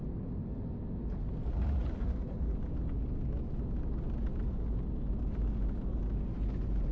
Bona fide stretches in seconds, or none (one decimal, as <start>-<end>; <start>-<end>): 0.0-6.9